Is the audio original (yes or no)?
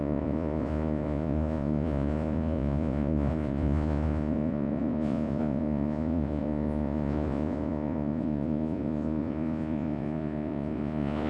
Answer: no